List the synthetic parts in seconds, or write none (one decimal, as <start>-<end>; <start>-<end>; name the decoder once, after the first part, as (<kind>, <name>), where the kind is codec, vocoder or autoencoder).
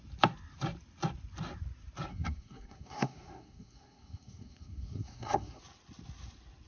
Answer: 2.1-5.6 (codec, SNAC)